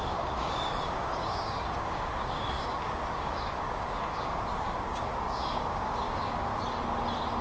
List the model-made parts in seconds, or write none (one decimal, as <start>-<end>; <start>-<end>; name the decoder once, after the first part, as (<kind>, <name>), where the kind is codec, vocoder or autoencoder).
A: 0.0-6.5 (codec, DAC)